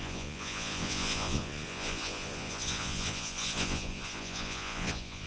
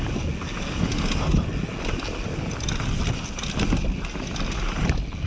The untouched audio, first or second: second